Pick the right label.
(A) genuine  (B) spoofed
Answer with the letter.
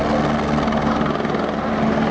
A